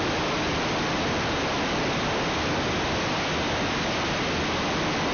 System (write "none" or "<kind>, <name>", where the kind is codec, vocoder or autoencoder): none